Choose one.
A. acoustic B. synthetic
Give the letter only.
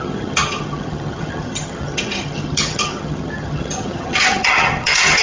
B